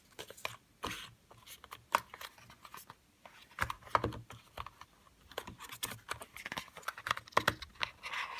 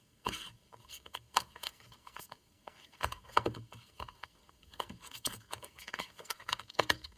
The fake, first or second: second